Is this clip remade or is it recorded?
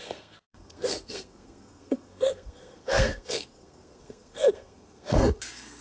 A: remade